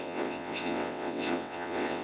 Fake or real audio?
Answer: fake